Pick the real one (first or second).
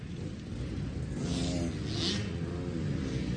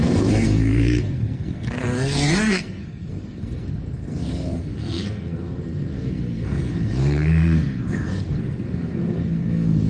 first